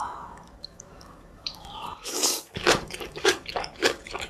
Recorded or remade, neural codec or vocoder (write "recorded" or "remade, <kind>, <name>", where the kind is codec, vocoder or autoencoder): remade, codec, DAC